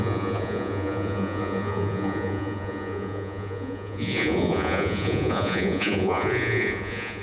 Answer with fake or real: fake